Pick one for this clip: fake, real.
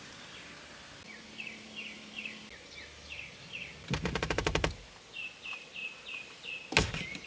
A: real